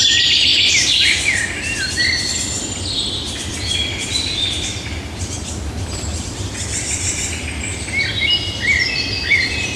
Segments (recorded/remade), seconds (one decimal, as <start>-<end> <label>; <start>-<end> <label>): 0.0-9.8 remade

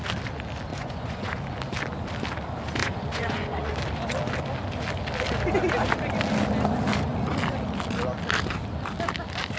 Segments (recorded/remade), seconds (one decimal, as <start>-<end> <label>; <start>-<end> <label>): 0.0-0.7 recorded; 0.7-1.4 remade; 1.4-2.8 recorded; 2.8-3.7 remade; 3.7-9.6 recorded